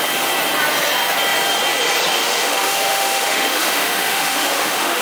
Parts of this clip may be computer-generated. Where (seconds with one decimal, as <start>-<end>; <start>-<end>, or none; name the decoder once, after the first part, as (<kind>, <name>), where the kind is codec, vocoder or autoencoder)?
2.2-5.0 (autoencoder, DAC-VAE)